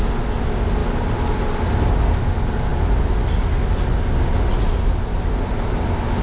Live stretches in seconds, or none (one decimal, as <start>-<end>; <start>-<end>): 0.0-6.2